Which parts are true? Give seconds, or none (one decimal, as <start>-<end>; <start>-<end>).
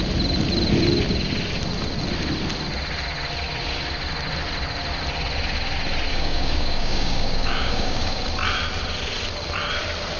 0.0-6.1; 8.2-10.2